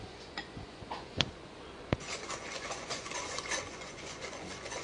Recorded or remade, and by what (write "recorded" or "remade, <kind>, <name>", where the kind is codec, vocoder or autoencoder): remade, vocoder, Vocos